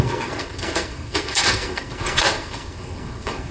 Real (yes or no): no